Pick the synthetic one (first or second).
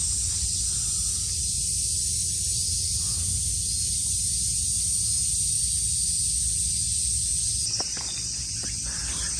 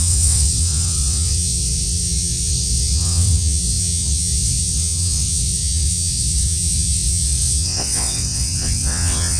second